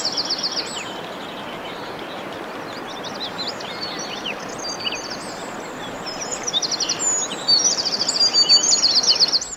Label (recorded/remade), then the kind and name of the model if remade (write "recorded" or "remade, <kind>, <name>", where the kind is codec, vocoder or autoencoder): recorded